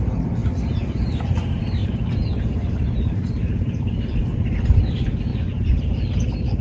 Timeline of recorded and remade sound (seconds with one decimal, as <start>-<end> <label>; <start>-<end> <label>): 0.0-1.8 recorded; 1.8-4.1 remade; 4.1-5.3 recorded; 5.3-6.6 remade